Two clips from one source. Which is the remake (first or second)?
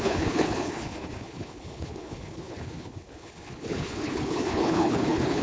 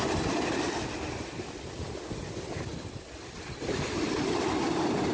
first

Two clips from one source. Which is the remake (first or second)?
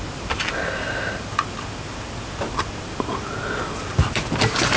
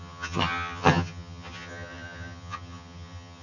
second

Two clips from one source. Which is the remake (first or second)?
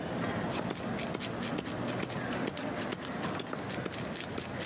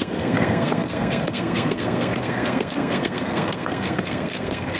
second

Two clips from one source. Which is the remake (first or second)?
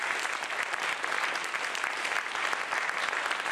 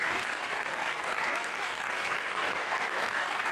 second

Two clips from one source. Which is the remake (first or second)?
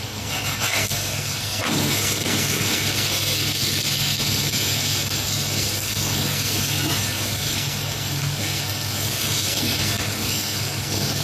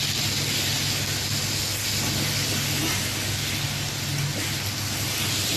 first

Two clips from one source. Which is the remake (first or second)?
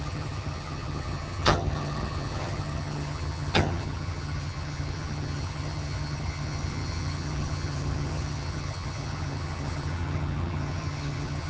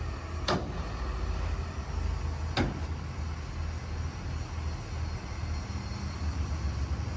first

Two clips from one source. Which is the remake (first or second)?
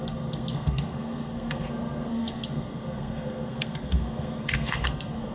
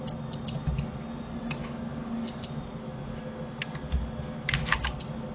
first